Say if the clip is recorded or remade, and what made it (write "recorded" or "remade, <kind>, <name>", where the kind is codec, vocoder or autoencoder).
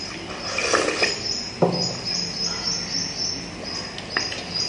recorded